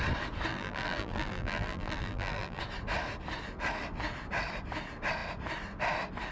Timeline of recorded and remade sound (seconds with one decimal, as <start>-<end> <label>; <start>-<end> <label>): 0.0-0.5 recorded; 0.5-2.6 remade; 2.6-6.3 recorded